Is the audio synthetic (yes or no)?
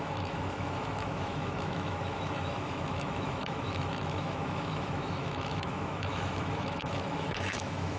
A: yes